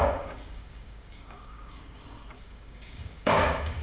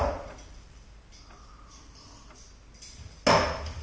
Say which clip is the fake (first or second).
first